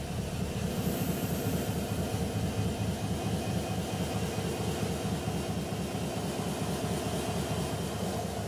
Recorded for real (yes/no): yes